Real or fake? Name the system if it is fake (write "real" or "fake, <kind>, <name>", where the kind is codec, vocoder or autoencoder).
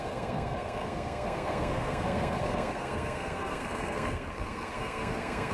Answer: fake, codec, SNAC